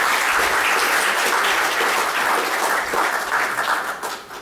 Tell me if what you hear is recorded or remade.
recorded